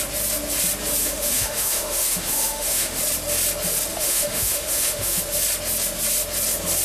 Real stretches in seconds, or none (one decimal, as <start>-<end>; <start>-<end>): 0.0-1.0; 3.0-3.9; 5.2-6.8